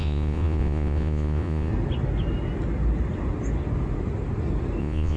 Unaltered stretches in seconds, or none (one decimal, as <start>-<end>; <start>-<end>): 1.7-4.8